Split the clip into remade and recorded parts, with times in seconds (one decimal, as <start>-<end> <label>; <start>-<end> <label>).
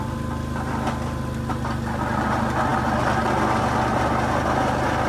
0.0-5.1 recorded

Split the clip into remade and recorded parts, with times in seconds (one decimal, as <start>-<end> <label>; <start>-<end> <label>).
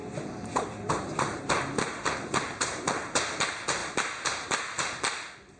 0.0-5.6 recorded